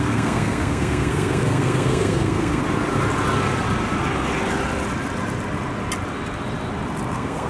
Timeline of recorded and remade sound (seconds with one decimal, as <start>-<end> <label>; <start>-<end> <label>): 0.0-2.6 remade; 2.6-7.1 recorded; 7.1-7.5 remade

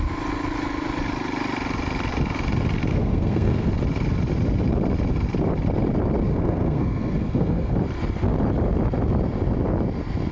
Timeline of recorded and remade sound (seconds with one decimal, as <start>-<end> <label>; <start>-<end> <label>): 0.0-2.9 recorded; 2.9-3.7 remade; 3.7-6.3 recorded; 6.3-7.7 remade; 7.7-10.3 recorded

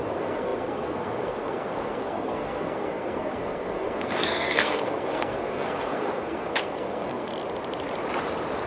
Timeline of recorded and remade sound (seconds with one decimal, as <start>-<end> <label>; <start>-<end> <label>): 0.0-7.3 remade; 7.3-8.7 recorded

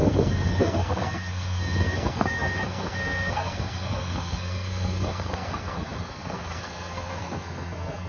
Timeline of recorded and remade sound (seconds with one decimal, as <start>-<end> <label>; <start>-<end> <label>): 0.0-8.1 remade

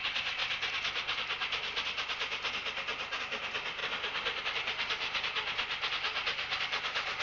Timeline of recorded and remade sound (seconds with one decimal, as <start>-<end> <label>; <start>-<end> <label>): 0.0-7.2 recorded